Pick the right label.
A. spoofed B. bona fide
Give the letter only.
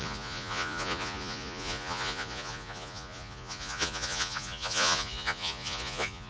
A